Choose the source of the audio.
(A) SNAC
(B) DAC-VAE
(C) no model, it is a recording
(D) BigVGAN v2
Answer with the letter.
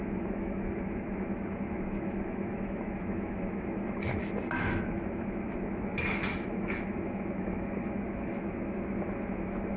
B